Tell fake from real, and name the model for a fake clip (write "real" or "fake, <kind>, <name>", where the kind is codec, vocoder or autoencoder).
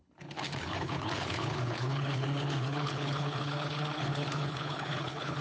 fake, codec, HILCodec